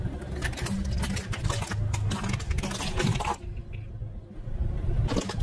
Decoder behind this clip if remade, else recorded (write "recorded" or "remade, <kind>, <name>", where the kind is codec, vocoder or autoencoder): recorded